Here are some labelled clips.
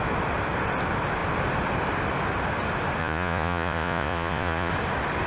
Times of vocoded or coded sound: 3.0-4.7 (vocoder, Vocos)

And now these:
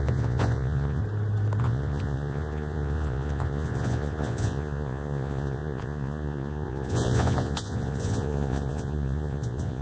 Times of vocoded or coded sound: 0.0-1.0 (vocoder, Vocos); 1.6-9.8

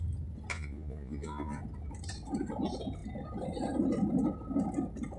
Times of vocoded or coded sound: 0.5-1.6 (vocoder, Vocos)

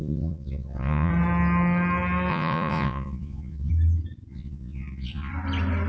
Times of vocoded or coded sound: 0.0-1.1 (vocoder, Vocos); 2.3-3.7; 4.3-5.3

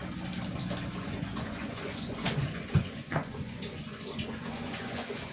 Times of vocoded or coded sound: 1.0-5.3 (vocoder, Vocos)

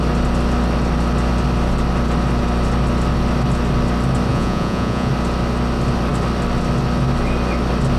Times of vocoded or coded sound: 4.3-5.1 (vocoder, Vocos)

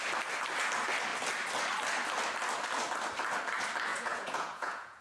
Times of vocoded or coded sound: 3.9-5.0 (vocoder, Vocos)